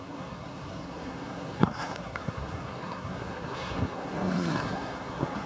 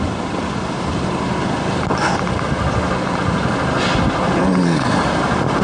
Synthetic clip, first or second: first